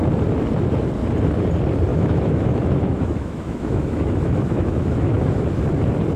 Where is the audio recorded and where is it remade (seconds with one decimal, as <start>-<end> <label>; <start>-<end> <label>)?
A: 0.0-1.9 recorded; 1.9-5.6 remade; 5.6-6.2 recorded